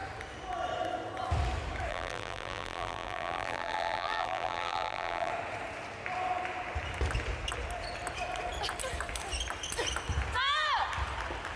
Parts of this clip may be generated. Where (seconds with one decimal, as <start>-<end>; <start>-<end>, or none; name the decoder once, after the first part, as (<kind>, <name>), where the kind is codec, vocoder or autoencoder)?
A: 1.9-5.3 (vocoder, BigVGAN v2)